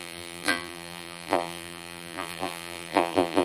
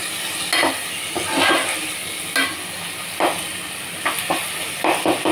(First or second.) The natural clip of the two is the second